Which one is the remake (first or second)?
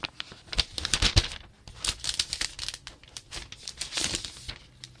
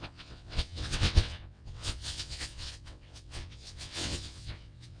second